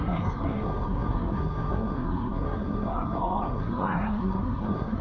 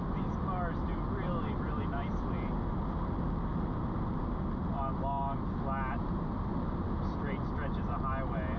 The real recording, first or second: second